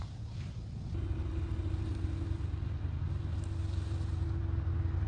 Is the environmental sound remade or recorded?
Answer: recorded